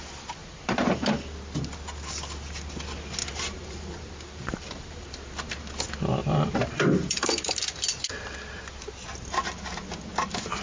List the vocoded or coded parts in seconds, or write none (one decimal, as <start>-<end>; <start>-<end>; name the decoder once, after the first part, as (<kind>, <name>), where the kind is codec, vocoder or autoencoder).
0.4-1.1 (vocoder, BigVGAN v2); 3.2-5.6; 6.2-7.6